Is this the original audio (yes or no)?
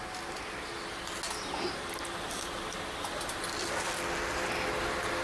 yes